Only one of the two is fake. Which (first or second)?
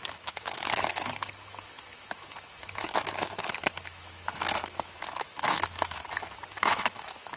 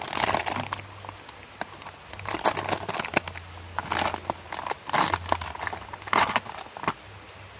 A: first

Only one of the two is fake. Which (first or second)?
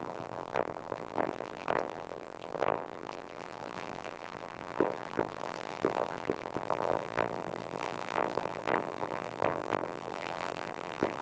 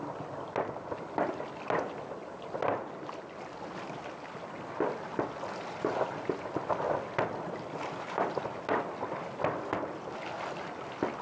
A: first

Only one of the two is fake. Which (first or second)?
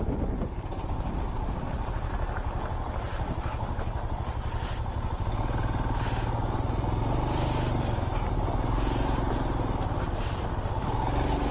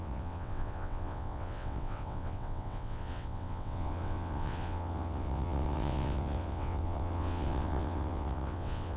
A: second